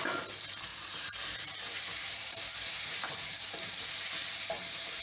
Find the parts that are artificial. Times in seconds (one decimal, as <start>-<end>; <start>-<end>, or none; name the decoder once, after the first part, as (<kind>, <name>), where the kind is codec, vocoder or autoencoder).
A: 0.7-3.7 (vocoder, BigVGAN v2); 4.2-5.0